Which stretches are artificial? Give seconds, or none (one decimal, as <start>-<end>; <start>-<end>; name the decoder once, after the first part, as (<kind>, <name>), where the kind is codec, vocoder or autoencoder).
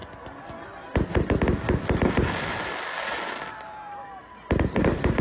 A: none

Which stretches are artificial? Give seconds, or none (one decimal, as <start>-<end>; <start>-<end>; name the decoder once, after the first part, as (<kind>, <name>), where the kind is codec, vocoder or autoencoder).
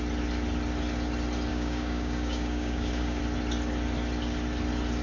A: 1.5-3.2 (codec, DAC)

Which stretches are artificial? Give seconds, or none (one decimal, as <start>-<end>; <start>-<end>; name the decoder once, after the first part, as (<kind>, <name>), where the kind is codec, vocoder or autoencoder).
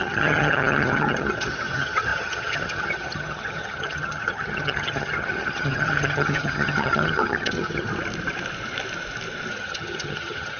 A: 0.0-7.9 (vocoder, HiFi-GAN); 9.5-10.6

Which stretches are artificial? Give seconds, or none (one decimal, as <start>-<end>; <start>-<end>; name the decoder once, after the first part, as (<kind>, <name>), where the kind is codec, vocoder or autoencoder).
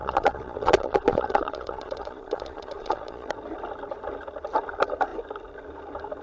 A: 0.0-3.3 (vocoder, Vocos)